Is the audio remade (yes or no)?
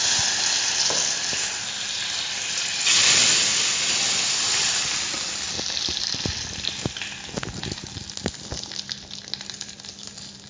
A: no